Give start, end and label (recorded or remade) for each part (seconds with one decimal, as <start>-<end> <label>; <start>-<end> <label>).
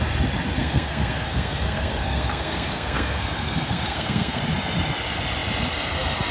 0.0-0.6 recorded; 0.6-4.4 remade; 4.4-6.3 recorded